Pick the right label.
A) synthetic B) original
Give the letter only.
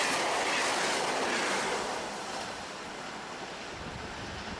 B